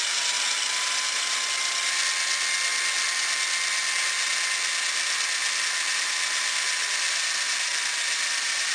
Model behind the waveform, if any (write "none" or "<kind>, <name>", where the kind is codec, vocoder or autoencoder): none